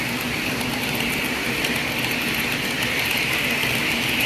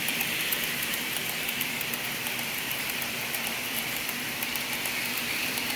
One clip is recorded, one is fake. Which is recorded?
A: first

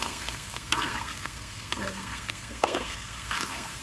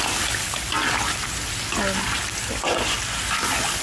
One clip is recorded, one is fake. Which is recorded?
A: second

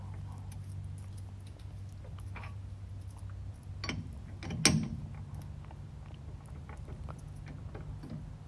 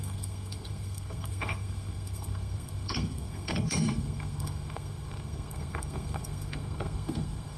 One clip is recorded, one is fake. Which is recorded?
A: first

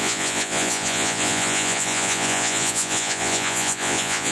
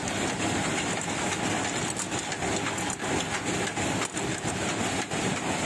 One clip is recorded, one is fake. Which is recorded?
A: second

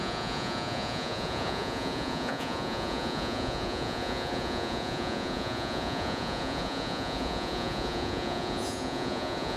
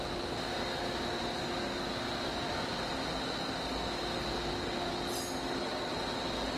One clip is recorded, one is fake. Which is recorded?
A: second